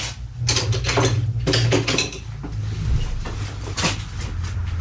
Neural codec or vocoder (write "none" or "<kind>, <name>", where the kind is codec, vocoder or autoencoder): none